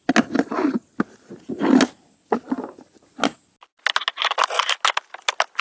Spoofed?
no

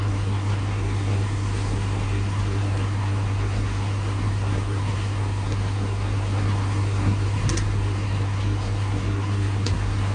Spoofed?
yes